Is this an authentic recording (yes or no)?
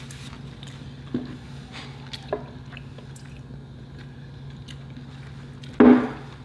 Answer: yes